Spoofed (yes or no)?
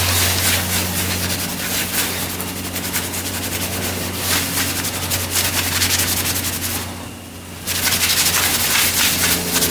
no